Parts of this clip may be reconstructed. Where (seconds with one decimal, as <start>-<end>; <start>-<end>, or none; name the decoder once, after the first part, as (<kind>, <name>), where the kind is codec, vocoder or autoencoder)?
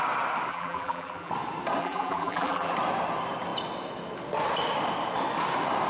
0.5-1.3 (vocoder, BigVGAN v2); 1.8-2.7